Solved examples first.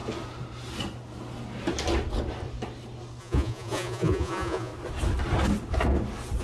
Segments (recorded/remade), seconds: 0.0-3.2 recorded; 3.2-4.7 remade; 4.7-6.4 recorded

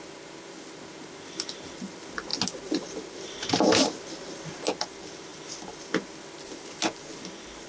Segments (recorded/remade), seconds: 0.0-7.7 recorded

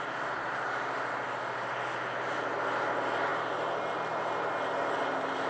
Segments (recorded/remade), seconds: 0.0-5.5 recorded

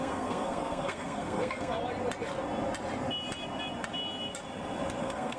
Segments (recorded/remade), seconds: 0.0-1.8 remade; 1.8-5.0 recorded; 5.0-5.4 remade

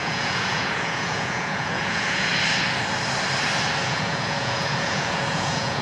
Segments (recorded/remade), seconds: 0.0-2.3 remade; 2.3-3.8 recorded; 3.8-5.8 remade

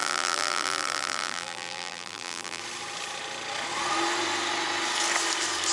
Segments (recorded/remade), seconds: 0.0-2.6 remade; 2.6-5.7 recorded